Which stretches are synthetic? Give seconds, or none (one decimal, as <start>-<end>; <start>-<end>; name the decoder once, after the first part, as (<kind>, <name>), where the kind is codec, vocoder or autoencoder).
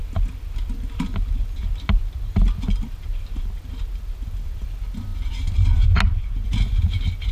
none